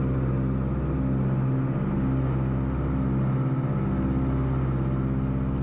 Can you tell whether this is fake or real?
real